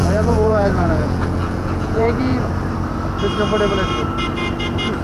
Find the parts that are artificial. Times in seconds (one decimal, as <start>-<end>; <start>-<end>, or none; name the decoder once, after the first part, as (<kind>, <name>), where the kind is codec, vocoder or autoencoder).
0.0-2.5 (vocoder, Vocos)